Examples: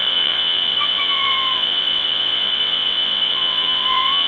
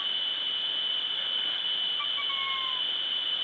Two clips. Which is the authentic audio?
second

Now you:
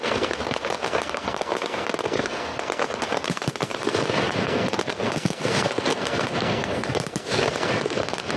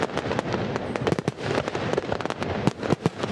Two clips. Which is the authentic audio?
second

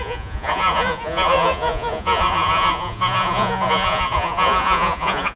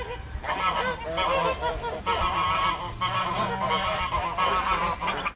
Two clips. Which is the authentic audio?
second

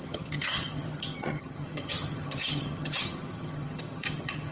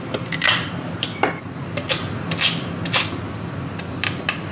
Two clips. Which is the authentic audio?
second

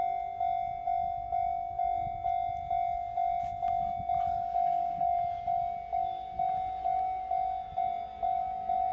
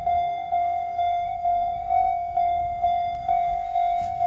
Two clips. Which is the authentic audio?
first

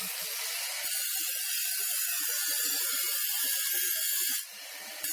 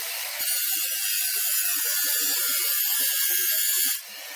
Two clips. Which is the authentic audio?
second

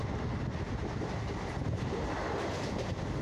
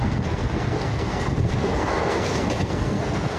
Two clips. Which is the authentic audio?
first